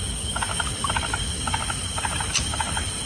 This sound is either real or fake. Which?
real